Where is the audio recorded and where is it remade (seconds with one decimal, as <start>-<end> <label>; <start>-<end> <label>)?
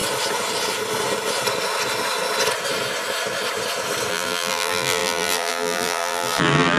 0.0-4.1 recorded; 4.1-6.8 remade